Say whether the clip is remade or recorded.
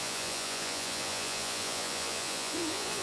remade